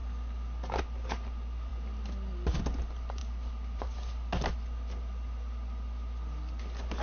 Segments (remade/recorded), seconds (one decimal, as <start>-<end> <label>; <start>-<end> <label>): 0.0-7.0 recorded